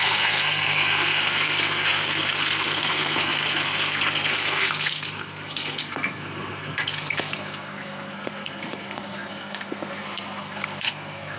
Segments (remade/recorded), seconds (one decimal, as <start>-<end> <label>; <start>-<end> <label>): 0.0-11.4 remade